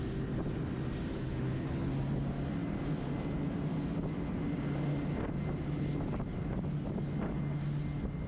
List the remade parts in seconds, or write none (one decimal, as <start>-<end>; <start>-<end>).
1.1-1.9